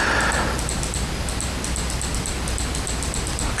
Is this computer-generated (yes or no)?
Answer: no